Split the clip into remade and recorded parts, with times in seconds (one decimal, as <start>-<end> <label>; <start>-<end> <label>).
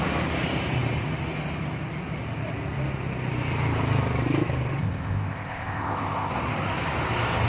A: 0.0-4.8 recorded; 4.8-6.3 remade; 6.3-7.5 recorded